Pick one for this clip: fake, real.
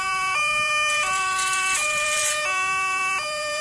fake